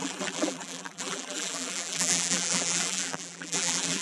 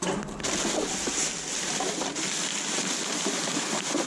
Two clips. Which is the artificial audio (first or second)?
first